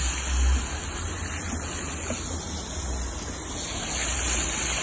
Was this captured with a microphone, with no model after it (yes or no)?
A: yes